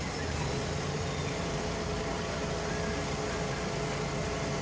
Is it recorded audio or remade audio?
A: recorded